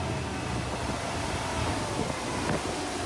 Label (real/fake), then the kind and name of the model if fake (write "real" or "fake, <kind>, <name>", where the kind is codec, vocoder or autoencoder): real